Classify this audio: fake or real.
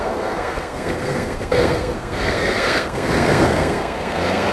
fake